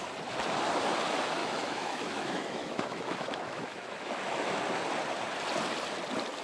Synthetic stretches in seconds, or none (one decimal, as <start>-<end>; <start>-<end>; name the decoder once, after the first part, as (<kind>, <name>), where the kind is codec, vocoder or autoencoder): 1.4-4.6 (autoencoder, DAC-VAE)